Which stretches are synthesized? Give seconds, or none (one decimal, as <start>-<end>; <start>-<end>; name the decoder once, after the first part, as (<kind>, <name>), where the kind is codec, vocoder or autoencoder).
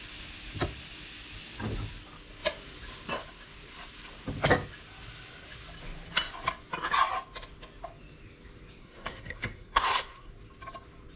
8.8-10.3 (codec, SNAC)